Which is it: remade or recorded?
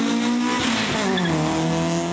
recorded